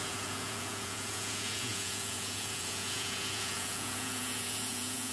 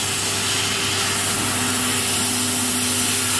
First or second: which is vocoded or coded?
first